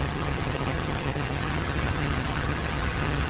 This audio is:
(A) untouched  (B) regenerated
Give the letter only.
B